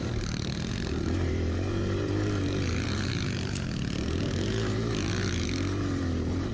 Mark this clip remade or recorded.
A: remade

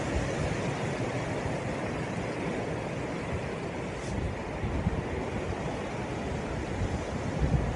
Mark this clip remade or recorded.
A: recorded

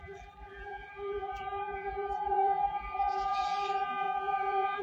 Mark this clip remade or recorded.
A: remade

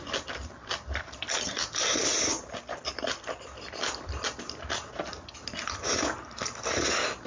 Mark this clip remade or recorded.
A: remade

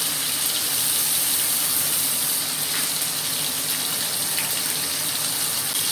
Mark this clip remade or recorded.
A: recorded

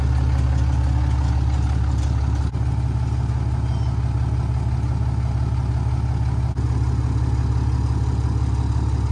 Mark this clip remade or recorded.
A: recorded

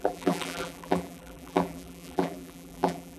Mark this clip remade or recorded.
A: remade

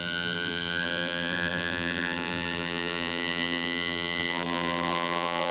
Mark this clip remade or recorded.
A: remade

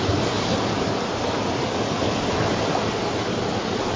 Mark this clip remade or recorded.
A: remade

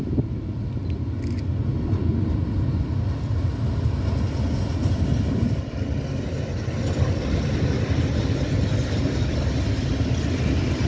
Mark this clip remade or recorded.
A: recorded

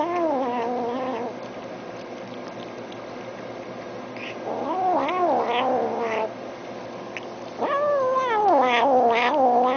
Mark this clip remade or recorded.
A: recorded